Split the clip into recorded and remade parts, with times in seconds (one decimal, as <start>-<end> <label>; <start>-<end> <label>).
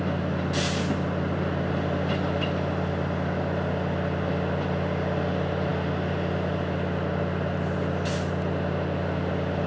0.0-9.7 recorded